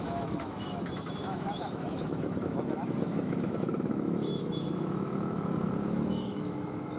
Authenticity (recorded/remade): remade